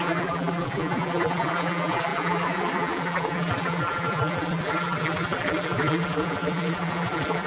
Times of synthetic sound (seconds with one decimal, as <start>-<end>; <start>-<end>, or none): 0.0-7.5